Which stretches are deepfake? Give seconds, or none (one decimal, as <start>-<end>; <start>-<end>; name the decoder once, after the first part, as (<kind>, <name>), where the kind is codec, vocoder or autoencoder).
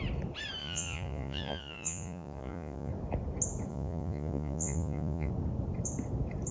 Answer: 0.6-2.9 (vocoder, Vocos); 3.7-5.3